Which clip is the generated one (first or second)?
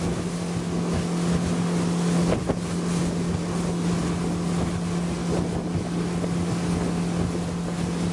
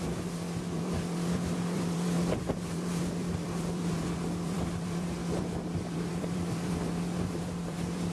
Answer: second